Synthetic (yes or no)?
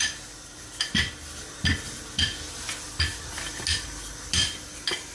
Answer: no